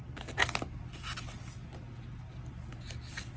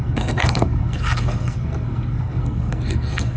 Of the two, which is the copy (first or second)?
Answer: second